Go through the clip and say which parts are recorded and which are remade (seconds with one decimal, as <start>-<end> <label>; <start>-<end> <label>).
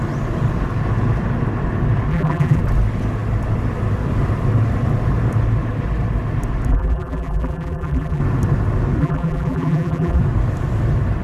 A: 0.0-2.1 recorded; 2.1-2.6 remade; 2.6-6.7 recorded; 6.7-8.2 remade; 8.2-9.0 recorded; 9.0-10.2 remade; 10.2-11.2 recorded